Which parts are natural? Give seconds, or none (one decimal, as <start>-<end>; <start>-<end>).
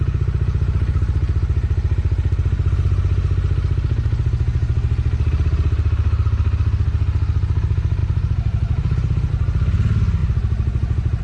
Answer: 0.0-11.2